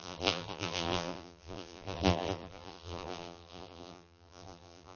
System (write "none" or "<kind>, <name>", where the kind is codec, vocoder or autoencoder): vocoder, BigVGAN v2